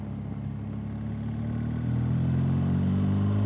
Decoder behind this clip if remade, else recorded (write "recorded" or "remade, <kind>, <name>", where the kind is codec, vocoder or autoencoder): recorded